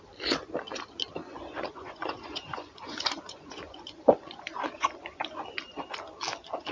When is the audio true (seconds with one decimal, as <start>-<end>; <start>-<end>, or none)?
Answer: 0.0-1.2; 5.2-6.7